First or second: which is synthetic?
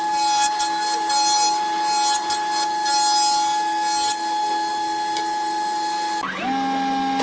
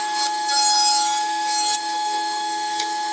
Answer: second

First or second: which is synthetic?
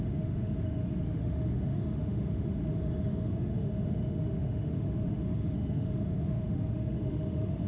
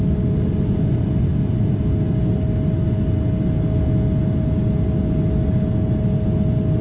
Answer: first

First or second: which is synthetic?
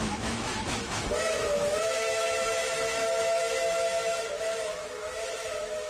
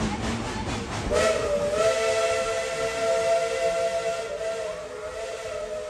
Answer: first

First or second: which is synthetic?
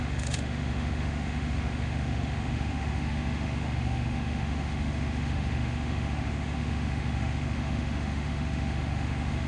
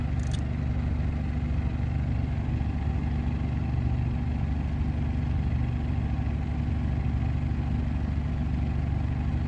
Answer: first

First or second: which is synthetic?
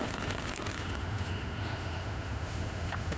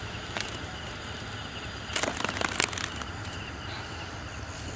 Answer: first